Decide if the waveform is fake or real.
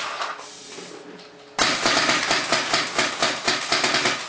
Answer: real